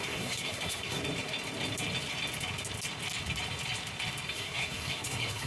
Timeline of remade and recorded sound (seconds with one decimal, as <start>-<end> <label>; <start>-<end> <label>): 0.0-1.0 remade; 1.0-4.3 recorded; 4.3-5.5 remade